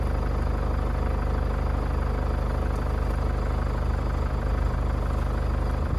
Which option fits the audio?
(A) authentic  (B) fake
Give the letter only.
A